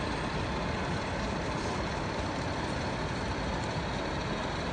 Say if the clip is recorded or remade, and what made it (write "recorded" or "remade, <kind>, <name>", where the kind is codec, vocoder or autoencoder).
recorded